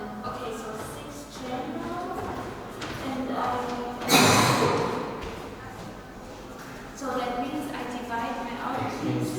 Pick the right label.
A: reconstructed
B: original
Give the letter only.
B